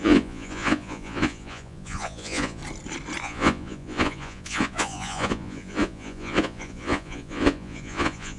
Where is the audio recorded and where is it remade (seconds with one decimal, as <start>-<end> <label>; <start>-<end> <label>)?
0.0-2.6 remade; 2.6-3.2 recorded; 3.2-8.4 remade